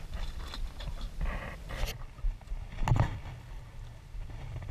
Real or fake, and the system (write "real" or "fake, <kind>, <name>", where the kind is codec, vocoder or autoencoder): real